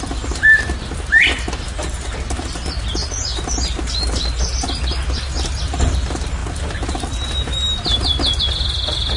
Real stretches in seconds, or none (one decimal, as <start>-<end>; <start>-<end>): 0.0-9.2